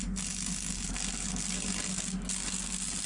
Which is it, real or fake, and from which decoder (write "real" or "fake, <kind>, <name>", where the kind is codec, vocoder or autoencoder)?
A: real